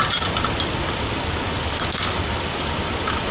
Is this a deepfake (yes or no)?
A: no